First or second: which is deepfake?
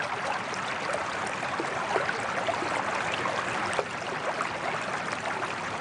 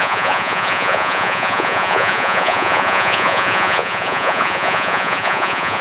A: second